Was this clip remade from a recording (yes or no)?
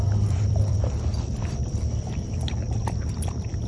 yes